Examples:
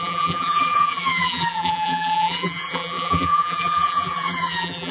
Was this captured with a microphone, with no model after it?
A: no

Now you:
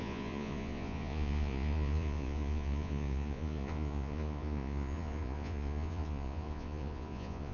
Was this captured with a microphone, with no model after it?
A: no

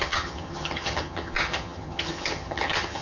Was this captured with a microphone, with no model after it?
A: no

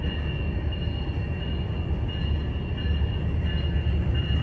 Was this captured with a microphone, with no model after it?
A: yes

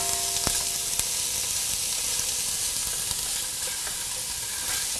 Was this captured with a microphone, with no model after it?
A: yes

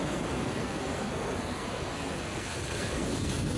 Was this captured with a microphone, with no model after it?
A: no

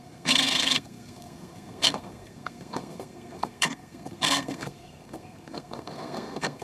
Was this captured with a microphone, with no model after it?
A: no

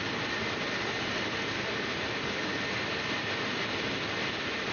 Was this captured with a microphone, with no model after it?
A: yes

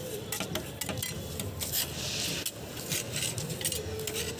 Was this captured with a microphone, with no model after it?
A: yes